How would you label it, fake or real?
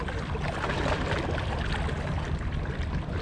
real